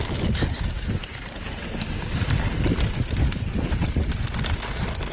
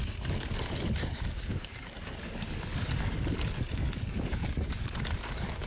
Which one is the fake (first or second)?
second